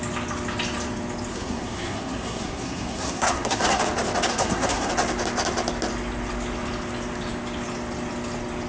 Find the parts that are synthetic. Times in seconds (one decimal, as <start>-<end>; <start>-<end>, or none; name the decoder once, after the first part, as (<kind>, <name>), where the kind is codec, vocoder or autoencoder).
1.3-3.8 (codec, SNAC); 4.3-4.9

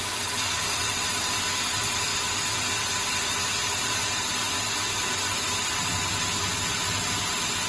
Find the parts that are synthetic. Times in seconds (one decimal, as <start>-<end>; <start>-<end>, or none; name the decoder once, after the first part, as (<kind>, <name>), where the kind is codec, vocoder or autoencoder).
none

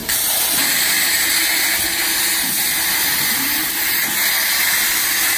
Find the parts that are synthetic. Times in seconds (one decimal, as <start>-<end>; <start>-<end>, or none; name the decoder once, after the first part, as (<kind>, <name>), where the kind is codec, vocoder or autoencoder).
none

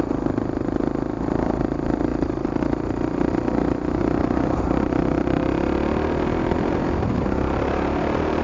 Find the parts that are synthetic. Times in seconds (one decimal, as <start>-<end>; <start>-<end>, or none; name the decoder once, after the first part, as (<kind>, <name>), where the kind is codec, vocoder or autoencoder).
none

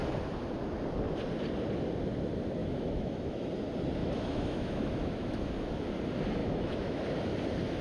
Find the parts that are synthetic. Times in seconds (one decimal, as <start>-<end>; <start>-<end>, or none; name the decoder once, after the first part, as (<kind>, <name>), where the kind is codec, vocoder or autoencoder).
2.6-3.5 (autoencoder, DAC-VAE); 4.0-5.5; 6.4-7.0

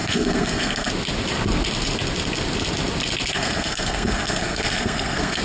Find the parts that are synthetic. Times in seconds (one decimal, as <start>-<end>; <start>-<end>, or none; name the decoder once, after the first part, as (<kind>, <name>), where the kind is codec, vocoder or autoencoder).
0.0-0.9 (codec, SNAC); 3.3-5.4

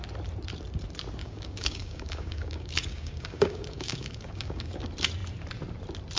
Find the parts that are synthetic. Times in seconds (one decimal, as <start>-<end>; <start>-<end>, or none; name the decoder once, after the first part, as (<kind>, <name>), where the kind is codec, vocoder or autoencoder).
1.2-4.8 (codec, DAC)